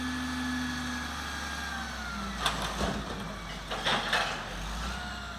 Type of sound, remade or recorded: recorded